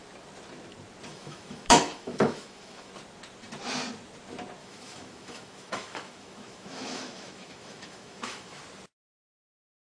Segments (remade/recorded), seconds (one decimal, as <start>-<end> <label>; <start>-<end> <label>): 0.0-1.1 recorded; 1.1-2.9 remade; 2.9-4.6 recorded; 4.6-8.6 remade; 8.6-9.9 recorded